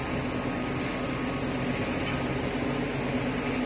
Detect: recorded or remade recorded